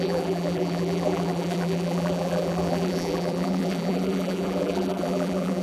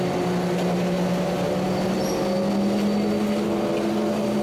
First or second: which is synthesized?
first